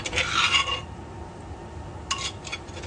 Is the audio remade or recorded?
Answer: recorded